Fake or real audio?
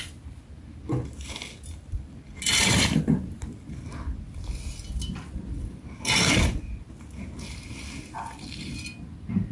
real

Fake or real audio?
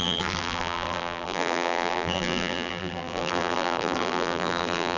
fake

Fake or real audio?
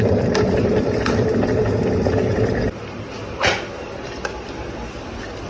fake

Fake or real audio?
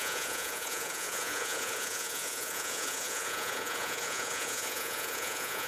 fake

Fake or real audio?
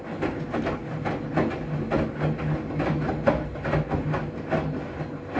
real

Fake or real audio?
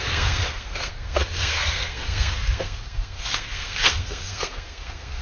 fake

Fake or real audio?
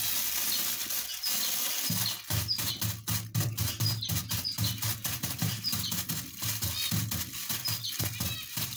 real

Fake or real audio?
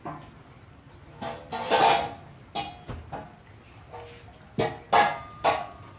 real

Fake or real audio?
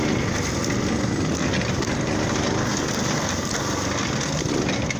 real